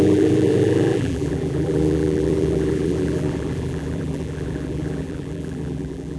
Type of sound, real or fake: fake